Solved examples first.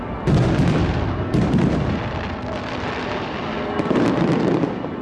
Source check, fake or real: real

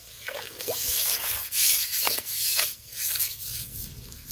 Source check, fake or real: fake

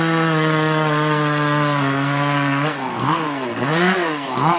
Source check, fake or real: fake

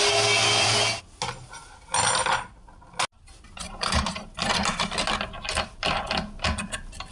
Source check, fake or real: real